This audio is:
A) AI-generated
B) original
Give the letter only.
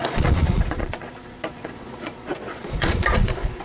A